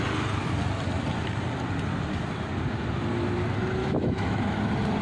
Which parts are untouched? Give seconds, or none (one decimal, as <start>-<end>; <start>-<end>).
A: 0.0-3.8; 4.6-5.0